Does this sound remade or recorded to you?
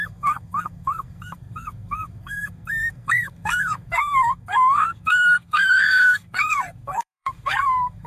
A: remade